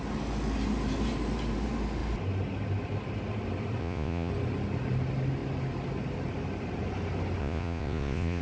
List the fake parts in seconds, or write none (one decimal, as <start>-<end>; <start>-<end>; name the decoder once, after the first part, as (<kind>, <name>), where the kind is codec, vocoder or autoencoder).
3.8-4.3 (vocoder, Vocos); 7.4-8.4